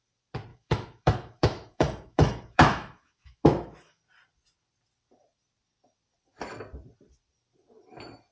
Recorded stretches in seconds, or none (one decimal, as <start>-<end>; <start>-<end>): 0.0-0.5; 4.0-8.3